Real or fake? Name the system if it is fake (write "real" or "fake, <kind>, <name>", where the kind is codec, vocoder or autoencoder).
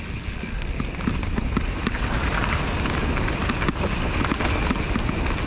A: real